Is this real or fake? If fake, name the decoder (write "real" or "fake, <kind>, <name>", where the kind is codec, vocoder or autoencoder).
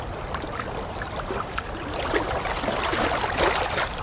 fake, vocoder, BigVGAN v2